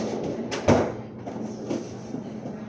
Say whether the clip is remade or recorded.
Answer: recorded